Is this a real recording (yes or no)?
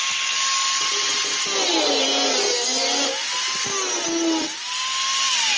yes